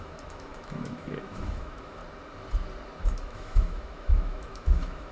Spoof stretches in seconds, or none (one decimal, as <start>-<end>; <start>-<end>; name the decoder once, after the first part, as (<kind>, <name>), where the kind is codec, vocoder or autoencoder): 0.0-2.0 (autoencoder, DAC-VAE); 3.0-5.1